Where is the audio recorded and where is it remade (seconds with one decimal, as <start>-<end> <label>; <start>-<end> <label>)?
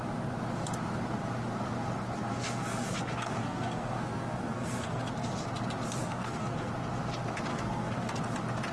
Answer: 0.0-2.3 recorded; 2.3-5.3 remade; 5.3-6.0 recorded; 6.0-6.7 remade; 6.7-7.5 recorded; 7.5-8.2 remade; 8.2-8.7 recorded